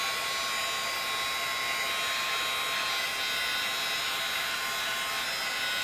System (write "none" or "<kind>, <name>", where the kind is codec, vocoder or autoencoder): none